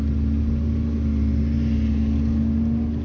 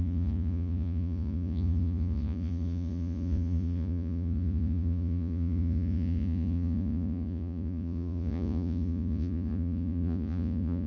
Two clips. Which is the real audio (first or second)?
first